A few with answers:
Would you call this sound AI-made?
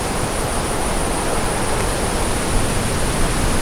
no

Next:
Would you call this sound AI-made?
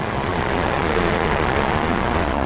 yes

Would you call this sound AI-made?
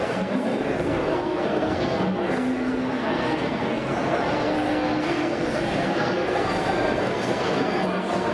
yes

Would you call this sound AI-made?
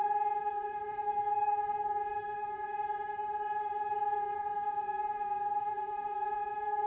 yes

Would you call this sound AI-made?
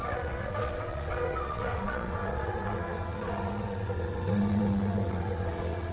yes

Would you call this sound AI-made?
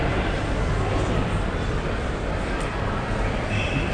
yes